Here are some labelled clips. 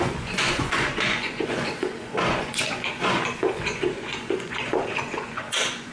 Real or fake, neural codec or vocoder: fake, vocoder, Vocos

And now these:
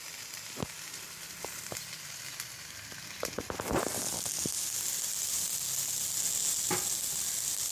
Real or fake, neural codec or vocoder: real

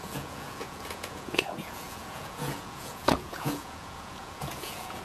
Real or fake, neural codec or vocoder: fake, vocoder, Vocos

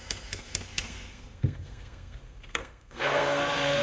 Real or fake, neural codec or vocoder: fake, codec, SNAC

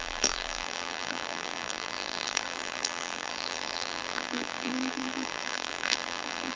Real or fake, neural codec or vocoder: fake, vocoder, BigVGAN v2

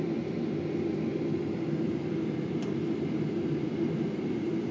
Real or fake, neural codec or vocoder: real